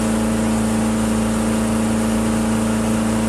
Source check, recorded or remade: recorded